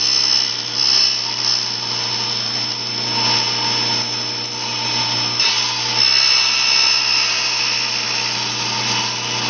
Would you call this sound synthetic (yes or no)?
no